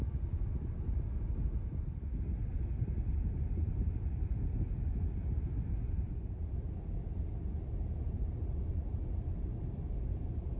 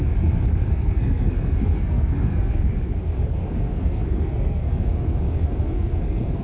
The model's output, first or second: second